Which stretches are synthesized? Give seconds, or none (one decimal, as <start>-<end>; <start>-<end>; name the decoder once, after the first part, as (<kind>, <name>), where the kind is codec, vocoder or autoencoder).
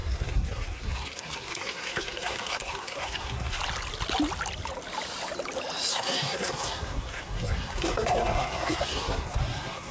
0.0-3.6 (codec, SNAC); 5.9-9.9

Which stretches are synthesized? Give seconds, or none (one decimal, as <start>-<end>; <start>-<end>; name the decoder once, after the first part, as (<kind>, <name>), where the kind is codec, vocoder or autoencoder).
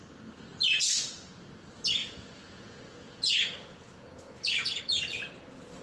2.0-4.8 (vocoder, Vocos)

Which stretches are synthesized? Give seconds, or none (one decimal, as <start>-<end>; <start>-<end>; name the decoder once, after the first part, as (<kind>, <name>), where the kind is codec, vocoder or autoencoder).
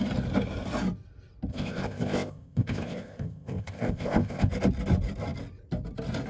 1.5-4.5 (codec, ZipCodec)